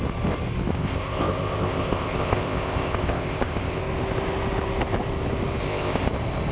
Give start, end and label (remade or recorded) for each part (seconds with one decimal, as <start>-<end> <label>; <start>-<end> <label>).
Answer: 0.0-0.7 recorded; 0.7-3.8 remade; 3.8-5.6 recorded; 5.6-6.1 remade; 6.1-6.5 recorded